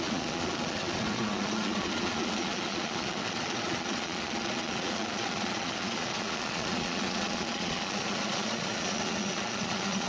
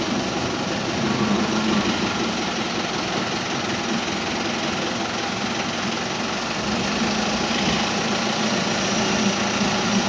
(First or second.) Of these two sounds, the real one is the second